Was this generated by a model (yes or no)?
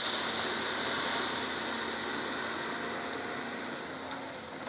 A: no